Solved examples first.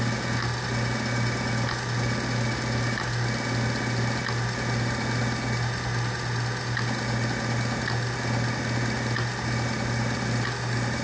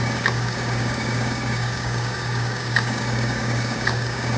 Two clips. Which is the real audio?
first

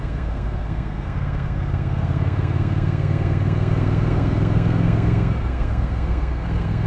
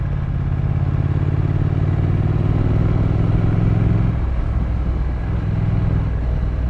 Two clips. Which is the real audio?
second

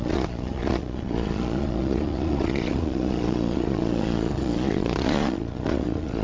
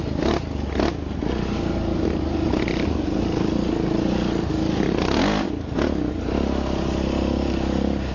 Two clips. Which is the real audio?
second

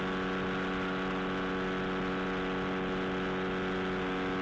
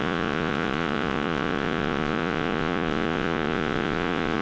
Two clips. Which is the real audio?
first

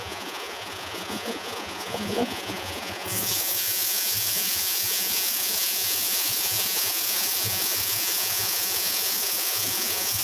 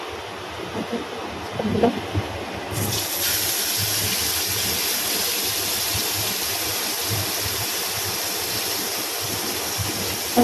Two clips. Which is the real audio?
second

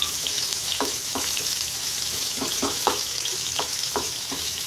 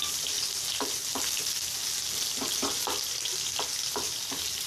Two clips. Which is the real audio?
second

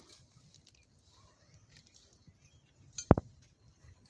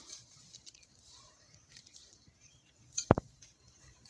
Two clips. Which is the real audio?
first